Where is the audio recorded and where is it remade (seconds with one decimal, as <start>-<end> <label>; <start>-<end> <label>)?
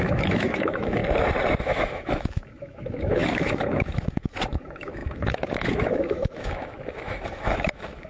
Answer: 0.0-1.0 remade; 1.0-1.6 recorded; 1.6-8.1 remade